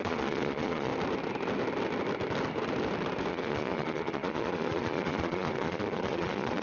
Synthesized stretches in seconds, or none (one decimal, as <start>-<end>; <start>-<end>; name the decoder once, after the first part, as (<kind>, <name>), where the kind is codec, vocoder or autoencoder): 0.0-0.9 (vocoder, Vocos); 3.3-6.6